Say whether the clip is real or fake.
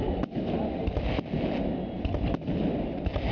real